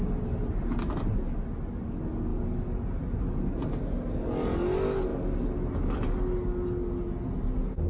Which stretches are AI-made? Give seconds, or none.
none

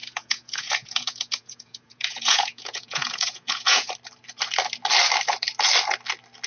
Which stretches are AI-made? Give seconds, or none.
0.0-3.9

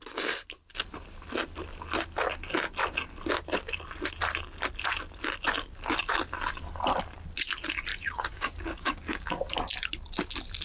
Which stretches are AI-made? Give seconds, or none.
7.9-9.3

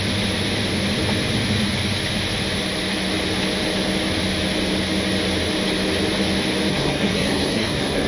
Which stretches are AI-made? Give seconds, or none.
6.7-8.1